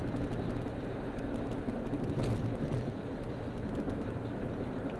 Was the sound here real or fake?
real